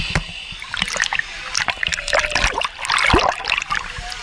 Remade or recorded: recorded